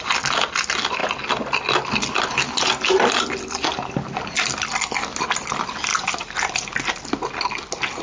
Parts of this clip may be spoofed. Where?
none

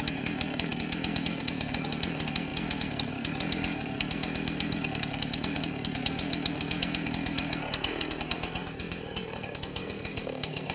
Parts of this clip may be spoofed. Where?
0.0-10.7 (codec, SNAC)

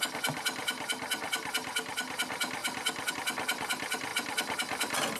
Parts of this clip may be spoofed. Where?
none

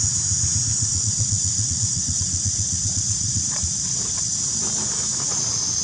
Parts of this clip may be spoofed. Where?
0.7-4.2 (vocoder, Vocos)